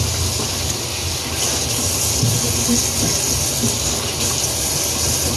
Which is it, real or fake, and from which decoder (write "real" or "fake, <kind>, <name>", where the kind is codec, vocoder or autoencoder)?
real